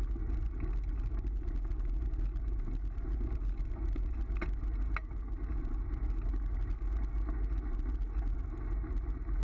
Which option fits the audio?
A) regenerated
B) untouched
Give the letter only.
B